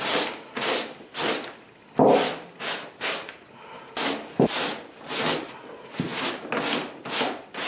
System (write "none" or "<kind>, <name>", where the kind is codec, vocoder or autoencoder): none